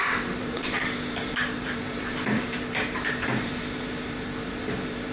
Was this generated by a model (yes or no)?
yes